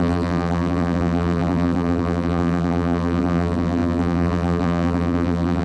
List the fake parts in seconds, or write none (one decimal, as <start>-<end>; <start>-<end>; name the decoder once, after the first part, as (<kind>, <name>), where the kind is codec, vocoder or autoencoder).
0.0-5.6 (vocoder, BigVGAN v2)